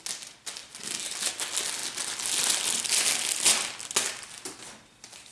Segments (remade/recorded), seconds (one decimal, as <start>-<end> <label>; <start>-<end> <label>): 0.0-5.3 recorded

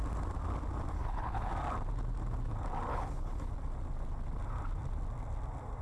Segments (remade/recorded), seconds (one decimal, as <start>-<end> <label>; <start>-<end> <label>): 0.0-0.9 recorded; 0.9-1.5 remade; 1.5-2.9 recorded; 2.9-3.5 remade; 3.5-5.8 recorded

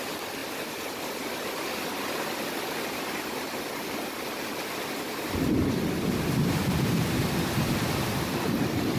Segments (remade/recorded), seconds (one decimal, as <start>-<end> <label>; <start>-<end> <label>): 0.0-0.4 remade; 0.4-1.8 recorded; 1.8-9.0 remade

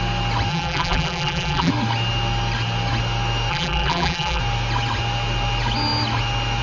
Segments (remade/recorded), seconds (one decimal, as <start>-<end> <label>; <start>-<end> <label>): 0.0-0.5 recorded; 0.5-1.7 remade; 1.7-3.5 recorded; 3.5-4.4 remade; 4.4-6.6 recorded

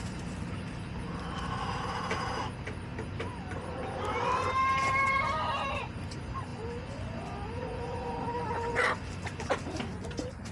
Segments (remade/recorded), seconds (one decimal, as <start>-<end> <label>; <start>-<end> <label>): 0.0-6.5 remade; 6.5-9.5 recorded; 9.5-10.5 remade

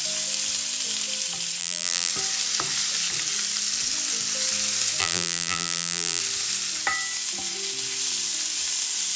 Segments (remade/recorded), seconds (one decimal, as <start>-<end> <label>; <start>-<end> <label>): 0.0-1.6 recorded; 1.6-2.1 remade; 2.1-5.0 recorded; 5.0-6.2 remade; 6.2-9.2 recorded

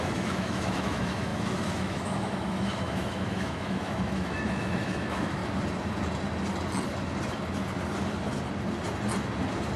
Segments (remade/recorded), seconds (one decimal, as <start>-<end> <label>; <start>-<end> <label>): 0.0-5.4 remade; 5.4-9.8 recorded